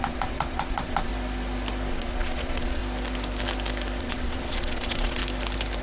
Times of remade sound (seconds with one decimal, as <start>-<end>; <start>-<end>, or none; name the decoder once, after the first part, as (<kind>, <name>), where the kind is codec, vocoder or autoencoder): 0.0-1.1 (vocoder, Vocos); 1.9-2.8; 4.0-5.2